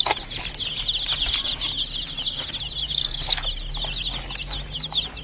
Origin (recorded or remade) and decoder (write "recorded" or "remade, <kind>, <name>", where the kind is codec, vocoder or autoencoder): recorded